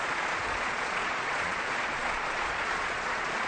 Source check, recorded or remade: remade